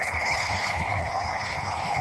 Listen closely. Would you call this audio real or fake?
fake